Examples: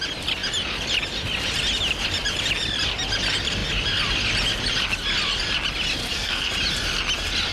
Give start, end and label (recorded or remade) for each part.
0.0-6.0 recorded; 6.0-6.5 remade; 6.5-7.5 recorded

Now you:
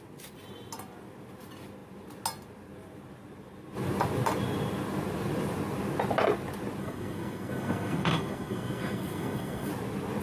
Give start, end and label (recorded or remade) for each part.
0.0-6.8 recorded; 6.8-9.7 remade; 9.7-10.2 recorded

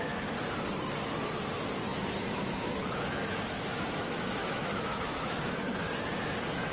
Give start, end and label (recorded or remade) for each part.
0.0-1.9 recorded; 1.9-5.9 remade; 5.9-6.7 recorded